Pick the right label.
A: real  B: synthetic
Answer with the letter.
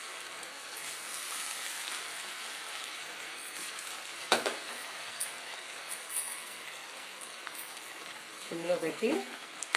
B